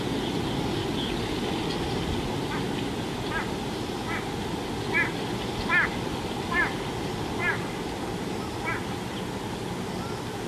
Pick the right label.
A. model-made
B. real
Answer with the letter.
B